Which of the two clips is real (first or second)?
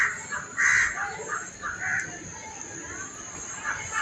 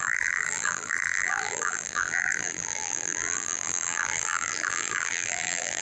first